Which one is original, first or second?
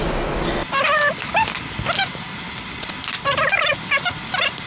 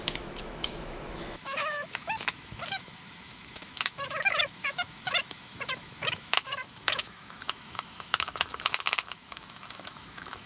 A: first